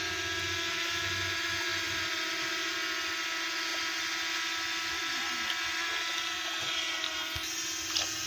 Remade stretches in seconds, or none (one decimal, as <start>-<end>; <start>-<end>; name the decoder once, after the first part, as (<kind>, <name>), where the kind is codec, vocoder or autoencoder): 1.7-2.7 (vocoder, BigVGAN v2)